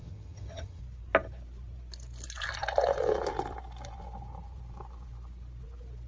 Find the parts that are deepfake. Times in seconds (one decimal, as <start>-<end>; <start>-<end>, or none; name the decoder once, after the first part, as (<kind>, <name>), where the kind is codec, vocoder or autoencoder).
0.0-0.8 (vocoder, HiFi-GAN)